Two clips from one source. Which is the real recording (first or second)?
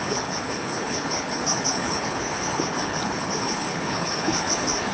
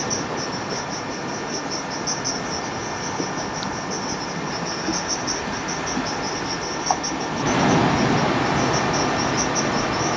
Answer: second